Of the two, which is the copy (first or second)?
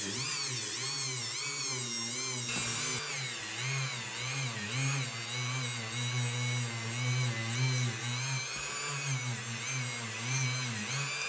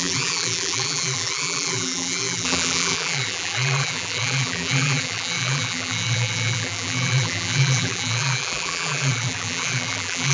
second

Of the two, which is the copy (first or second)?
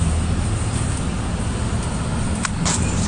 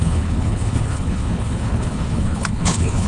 second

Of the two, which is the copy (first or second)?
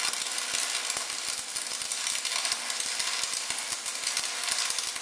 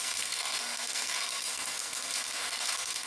second